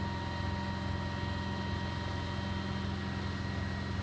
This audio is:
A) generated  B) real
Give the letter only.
B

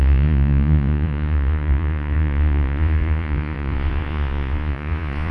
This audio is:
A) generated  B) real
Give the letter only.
A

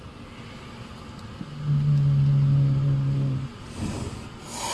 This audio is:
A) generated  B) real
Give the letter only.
B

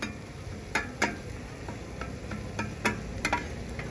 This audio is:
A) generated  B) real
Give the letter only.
B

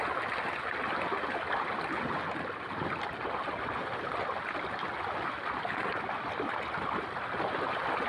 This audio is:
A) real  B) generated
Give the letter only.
A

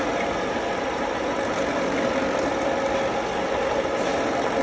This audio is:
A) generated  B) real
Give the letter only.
B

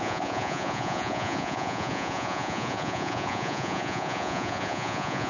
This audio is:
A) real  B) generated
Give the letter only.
B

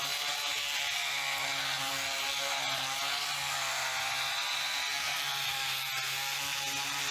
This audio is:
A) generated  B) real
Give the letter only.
B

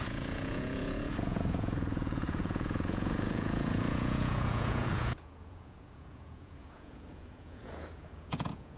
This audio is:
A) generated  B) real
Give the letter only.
A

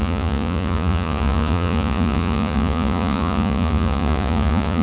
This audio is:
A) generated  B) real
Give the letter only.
A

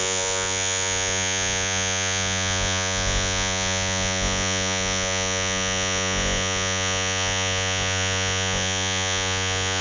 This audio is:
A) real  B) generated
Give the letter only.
B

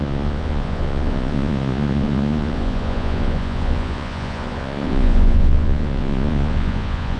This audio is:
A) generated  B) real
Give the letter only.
A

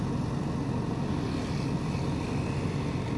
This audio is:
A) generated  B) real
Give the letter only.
B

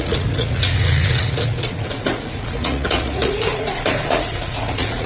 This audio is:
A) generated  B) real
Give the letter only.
A